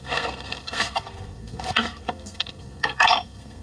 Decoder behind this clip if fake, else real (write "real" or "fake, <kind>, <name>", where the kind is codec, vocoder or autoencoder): fake, codec, SNAC